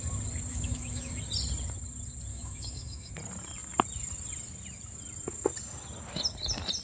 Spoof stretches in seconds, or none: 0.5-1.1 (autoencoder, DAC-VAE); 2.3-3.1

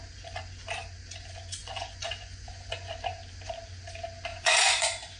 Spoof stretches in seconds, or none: 1.6-2.9 (vocoder, Vocos); 4.3-5.2